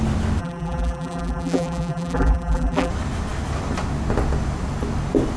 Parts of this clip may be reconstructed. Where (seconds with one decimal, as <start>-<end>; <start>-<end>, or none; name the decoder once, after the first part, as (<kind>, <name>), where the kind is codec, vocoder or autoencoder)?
0.4-2.9 (vocoder, BigVGAN v2)